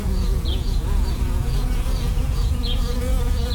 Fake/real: fake